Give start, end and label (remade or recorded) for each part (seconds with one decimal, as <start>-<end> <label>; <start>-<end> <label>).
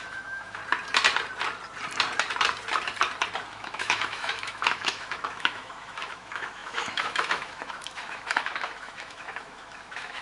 0.0-0.6 remade; 0.6-3.5 recorded; 3.5-10.2 remade